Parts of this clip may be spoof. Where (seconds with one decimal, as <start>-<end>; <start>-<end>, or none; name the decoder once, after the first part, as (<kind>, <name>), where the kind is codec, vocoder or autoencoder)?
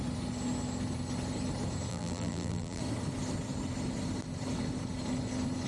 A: 1.9-2.8 (vocoder, BigVGAN v2)